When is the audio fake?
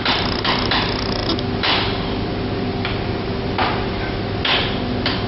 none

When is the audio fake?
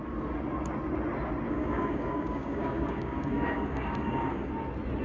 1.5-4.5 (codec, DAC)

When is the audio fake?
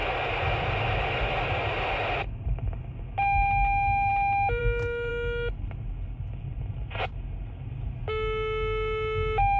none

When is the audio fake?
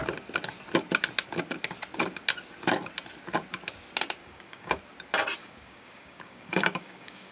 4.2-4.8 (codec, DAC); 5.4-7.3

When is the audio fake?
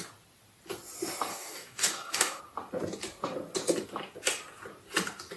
1.3-2.4 (codec, DAC)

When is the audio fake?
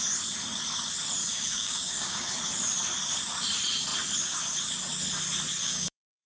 1.2-2.3 (codec, DAC); 5.6-6.3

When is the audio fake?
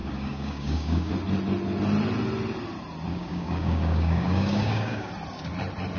0.0-1.1 (codec, DAC); 3.1-5.1